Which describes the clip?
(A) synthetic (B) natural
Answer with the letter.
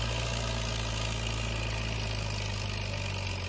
B